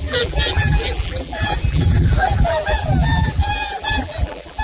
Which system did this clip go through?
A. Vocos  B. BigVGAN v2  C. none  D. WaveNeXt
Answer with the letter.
B